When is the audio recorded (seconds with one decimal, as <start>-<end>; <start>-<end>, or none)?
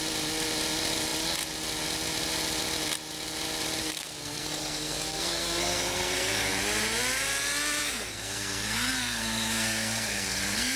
0.0-3.8; 6.6-7.8